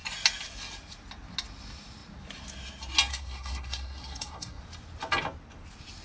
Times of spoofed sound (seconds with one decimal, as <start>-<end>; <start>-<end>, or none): 3.1-4.6